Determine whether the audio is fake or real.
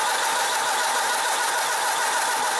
real